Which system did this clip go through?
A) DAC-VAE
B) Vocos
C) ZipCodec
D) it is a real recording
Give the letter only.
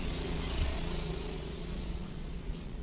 B